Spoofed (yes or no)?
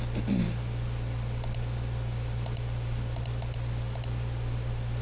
no